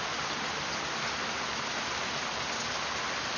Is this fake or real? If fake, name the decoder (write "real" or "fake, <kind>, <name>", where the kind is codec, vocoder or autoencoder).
real